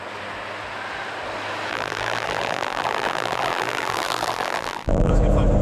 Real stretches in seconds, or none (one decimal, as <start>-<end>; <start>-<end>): 0.0-1.7; 5.1-5.6